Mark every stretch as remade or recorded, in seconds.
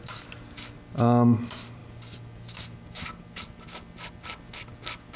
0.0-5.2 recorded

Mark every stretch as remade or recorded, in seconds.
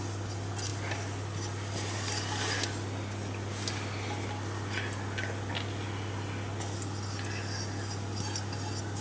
0.0-9.0 recorded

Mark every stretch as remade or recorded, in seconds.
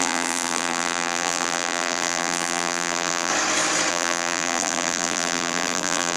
0.0-3.3 remade; 3.3-3.9 recorded; 3.9-6.2 remade